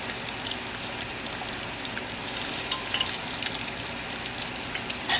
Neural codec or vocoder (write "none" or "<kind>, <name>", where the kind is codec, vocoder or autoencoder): none